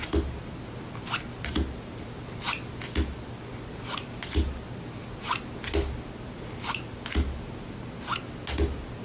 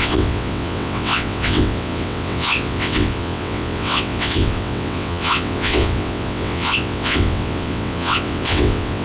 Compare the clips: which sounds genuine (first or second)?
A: first